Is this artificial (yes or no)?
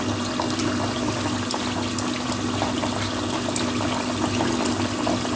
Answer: no